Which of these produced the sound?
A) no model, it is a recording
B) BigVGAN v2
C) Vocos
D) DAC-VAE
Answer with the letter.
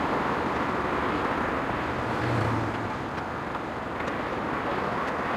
A